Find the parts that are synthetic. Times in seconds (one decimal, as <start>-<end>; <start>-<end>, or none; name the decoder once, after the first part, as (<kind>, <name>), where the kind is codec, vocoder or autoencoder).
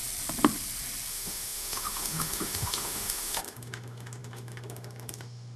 1.1-5.6 (autoencoder, DAC-VAE)